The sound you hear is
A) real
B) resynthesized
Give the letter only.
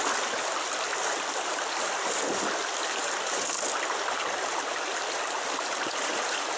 A